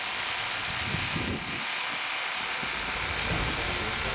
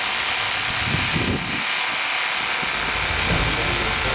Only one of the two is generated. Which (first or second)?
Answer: first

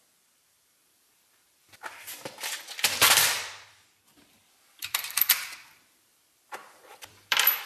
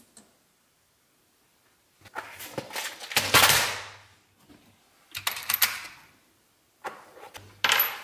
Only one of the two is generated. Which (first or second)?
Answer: first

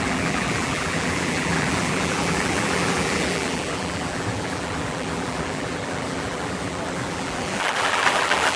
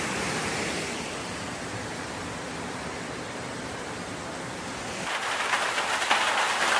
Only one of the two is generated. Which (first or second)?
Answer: first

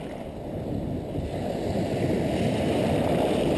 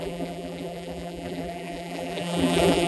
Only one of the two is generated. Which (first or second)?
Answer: second